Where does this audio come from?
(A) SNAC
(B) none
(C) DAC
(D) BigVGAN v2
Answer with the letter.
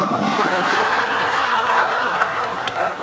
A